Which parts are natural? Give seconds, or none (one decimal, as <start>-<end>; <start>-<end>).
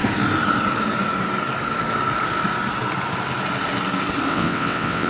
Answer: 0.0-4.3